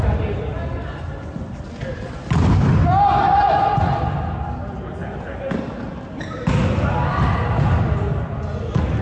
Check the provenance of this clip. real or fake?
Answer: real